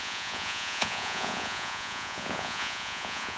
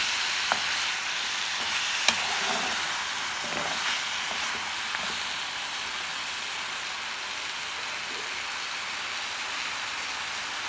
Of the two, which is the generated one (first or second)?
first